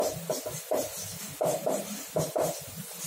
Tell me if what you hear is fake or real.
fake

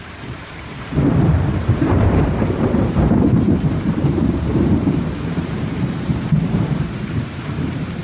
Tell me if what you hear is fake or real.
fake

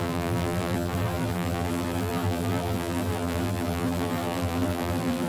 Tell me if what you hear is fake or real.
fake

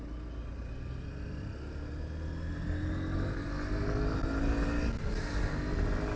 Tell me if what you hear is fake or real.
real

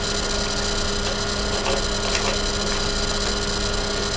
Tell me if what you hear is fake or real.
real